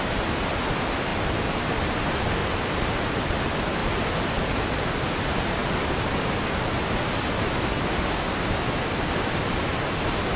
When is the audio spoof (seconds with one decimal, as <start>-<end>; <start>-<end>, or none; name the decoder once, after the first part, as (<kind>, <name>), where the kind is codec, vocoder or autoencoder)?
2.4-3.1 (vocoder, BigVGAN v2); 3.8-4.4